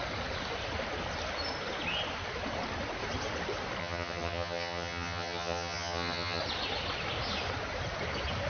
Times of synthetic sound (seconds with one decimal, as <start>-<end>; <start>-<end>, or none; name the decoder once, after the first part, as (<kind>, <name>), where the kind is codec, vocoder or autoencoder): 3.8-6.4 (vocoder, HiFi-GAN)